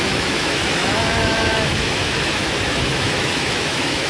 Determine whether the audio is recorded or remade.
remade